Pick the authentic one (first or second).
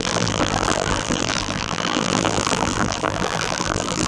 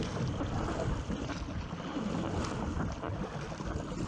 second